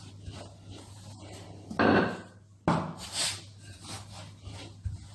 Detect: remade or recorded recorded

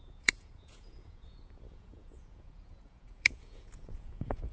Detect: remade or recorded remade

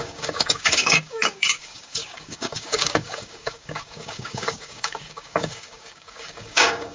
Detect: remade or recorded remade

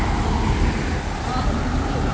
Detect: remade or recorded recorded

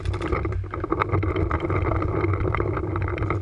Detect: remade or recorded recorded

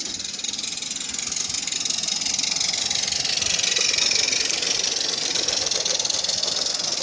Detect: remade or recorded recorded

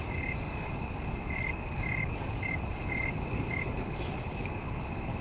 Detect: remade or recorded remade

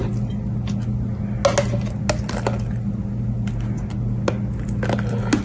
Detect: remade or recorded recorded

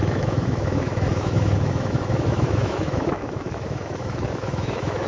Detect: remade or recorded remade